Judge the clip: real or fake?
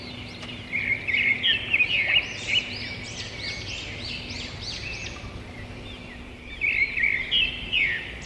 real